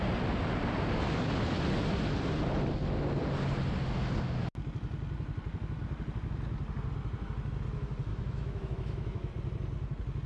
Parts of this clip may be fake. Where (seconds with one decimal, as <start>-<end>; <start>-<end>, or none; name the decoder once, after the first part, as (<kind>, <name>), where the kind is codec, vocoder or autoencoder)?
8.1-9.3 (autoencoder, DAC-VAE)